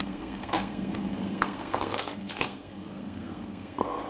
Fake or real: fake